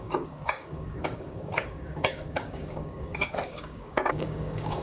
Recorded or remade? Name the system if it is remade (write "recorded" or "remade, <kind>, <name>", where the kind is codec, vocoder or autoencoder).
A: remade, codec, DAC